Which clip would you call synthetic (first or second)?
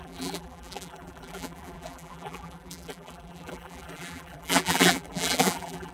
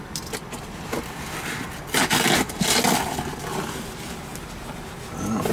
first